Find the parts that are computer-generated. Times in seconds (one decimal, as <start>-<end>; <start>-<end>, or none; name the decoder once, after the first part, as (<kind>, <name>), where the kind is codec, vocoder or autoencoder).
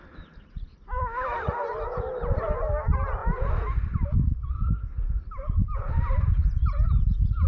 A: none